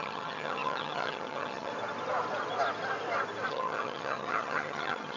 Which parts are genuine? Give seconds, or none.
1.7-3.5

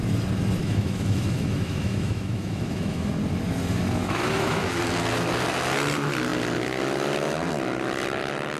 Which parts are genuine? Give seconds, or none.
0.0-0.6; 3.1-4.0; 4.8-8.6

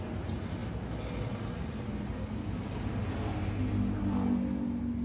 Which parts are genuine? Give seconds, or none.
0.0-5.0

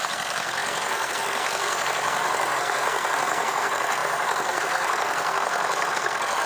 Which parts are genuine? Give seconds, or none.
none

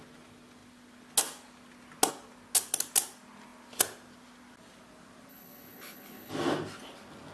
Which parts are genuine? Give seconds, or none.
0.0-5.3; 6.3-7.3